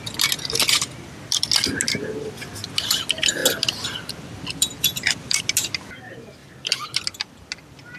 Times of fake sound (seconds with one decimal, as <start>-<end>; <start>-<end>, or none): none